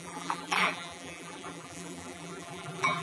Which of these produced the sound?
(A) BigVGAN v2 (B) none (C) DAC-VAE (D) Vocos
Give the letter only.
A